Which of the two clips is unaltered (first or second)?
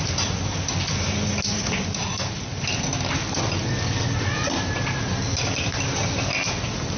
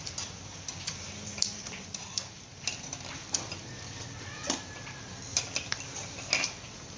first